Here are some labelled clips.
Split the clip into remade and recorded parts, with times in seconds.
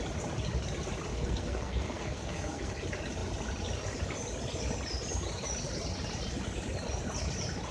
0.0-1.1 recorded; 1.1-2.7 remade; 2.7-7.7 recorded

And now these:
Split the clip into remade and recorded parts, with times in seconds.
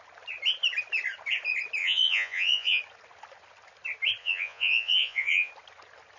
0.0-1.8 recorded; 1.8-2.8 remade; 2.8-4.2 recorded; 4.2-5.5 remade; 5.5-6.2 recorded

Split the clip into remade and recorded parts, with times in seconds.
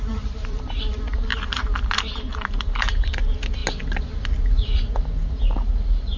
0.0-0.6 remade; 0.6-1.3 recorded; 1.3-3.1 remade; 3.1-6.2 recorded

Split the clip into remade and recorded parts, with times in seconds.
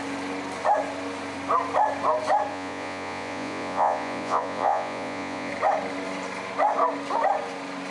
0.0-2.5 recorded; 2.5-5.5 remade; 5.5-7.9 recorded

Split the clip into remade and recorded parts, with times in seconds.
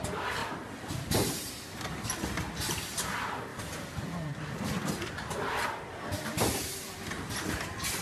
0.0-3.5 recorded; 3.5-7.6 remade; 7.6-8.0 recorded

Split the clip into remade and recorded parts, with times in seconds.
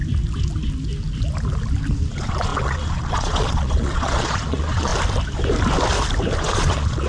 0.0-2.1 recorded; 2.1-4.9 remade; 4.9-6.4 recorded; 6.4-7.1 remade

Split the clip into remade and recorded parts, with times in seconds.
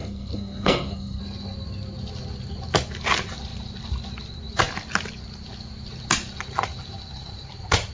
0.0-1.2 remade; 1.2-7.9 recorded